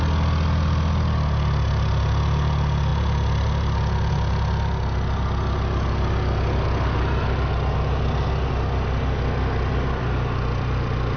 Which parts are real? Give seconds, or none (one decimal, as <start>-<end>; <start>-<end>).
0.0-11.2